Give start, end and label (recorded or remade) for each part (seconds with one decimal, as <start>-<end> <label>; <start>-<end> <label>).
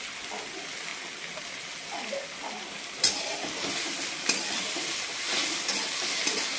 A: 0.0-6.6 recorded